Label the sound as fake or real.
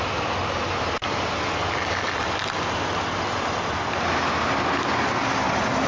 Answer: real